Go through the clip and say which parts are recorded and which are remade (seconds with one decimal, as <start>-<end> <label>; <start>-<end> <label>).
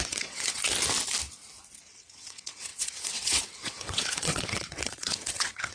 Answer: 0.0-0.6 remade; 0.6-1.8 recorded; 1.8-5.7 remade